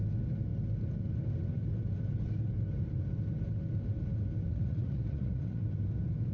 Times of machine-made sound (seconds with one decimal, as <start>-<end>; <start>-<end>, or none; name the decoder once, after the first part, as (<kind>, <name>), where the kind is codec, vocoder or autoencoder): 4.5-5.6 (vocoder, Vocos)